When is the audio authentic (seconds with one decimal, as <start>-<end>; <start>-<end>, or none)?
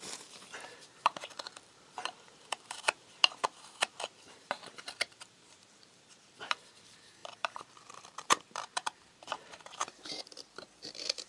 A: none